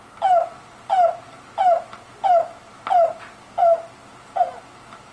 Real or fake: real